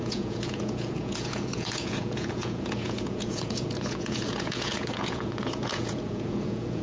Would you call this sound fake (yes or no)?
yes